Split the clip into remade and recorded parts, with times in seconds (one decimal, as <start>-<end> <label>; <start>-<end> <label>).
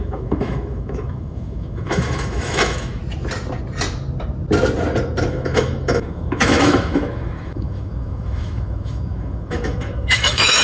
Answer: 0.0-3.0 remade; 3.0-5.3 recorded; 5.3-10.6 remade